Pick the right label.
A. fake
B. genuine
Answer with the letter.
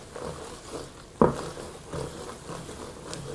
B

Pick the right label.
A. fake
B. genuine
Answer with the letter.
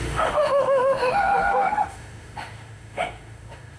A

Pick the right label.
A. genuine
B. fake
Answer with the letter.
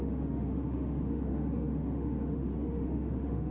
B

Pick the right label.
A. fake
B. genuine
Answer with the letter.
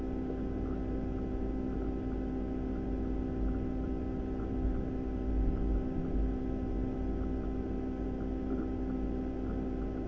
B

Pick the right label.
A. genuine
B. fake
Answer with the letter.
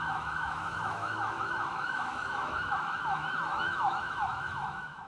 B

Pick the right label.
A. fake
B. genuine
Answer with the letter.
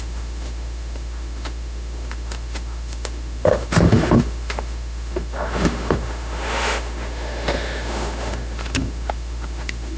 A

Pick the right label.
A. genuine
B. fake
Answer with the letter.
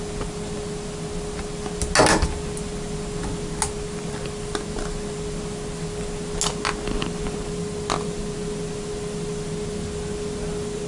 A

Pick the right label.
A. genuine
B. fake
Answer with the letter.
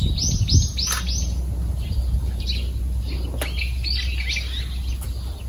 A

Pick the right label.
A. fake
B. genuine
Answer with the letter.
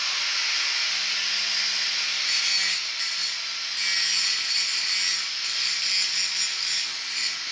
B